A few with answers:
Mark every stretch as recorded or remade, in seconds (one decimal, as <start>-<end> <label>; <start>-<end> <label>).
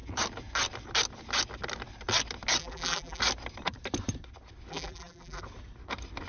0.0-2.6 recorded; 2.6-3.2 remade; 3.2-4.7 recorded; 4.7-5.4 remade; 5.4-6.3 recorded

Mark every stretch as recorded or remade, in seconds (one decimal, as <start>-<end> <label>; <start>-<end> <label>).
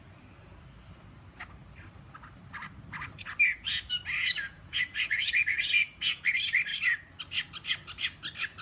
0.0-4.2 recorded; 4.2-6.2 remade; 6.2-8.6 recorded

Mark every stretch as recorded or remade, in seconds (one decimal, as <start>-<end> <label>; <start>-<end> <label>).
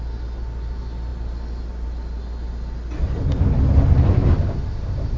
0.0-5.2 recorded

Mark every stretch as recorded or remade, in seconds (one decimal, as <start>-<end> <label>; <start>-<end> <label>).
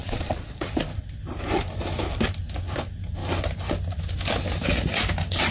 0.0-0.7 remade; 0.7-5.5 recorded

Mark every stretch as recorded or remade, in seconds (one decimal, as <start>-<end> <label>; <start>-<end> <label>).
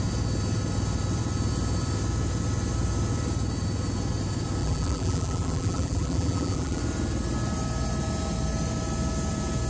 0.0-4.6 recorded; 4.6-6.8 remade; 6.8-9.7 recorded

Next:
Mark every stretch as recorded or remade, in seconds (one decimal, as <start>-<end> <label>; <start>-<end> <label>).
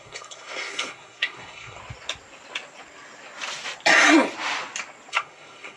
0.0-1.8 remade; 1.8-5.1 recorded; 5.1-5.8 remade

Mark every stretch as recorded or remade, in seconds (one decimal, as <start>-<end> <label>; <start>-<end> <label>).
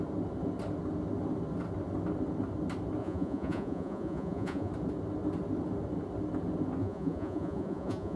0.0-3.0 recorded; 3.0-4.7 remade; 4.7-6.8 recorded; 6.8-8.2 remade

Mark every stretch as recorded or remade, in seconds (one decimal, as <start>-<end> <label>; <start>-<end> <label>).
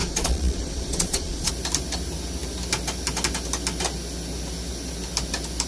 0.0-1.5 remade; 1.5-5.7 recorded